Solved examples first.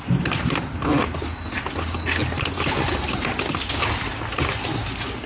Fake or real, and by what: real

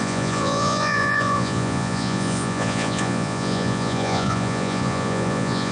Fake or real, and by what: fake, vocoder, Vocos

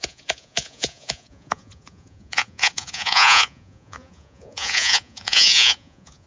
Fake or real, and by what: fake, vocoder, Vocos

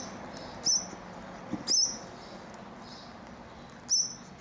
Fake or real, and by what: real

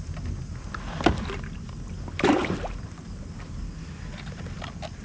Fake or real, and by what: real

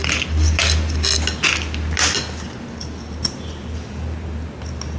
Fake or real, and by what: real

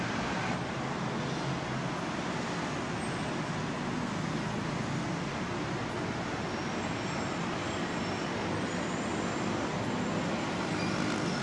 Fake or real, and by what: real